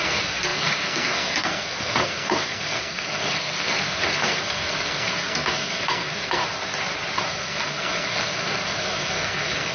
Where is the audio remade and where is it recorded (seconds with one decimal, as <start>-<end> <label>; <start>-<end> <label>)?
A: 0.0-6.4 remade; 6.4-7.3 recorded; 7.3-9.7 remade